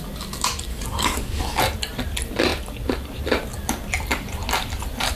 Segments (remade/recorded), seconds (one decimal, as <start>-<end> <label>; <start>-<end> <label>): 0.0-0.7 recorded; 0.7-1.6 remade; 1.6-5.2 recorded